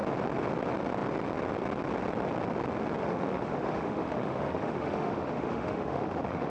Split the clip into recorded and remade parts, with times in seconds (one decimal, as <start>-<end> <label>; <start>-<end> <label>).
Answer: 0.0-3.0 recorded; 3.0-6.5 remade